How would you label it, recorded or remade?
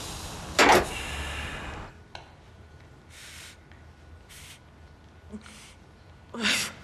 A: recorded